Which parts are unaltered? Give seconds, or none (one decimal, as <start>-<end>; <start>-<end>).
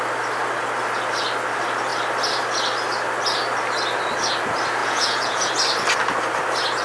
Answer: 0.0-4.8; 5.5-6.8